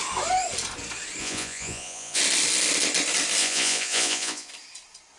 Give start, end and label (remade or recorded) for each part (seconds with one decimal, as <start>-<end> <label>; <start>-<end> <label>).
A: 0.0-1.2 recorded; 1.2-2.2 remade; 2.2-3.4 recorded; 3.4-4.5 remade; 4.5-5.2 recorded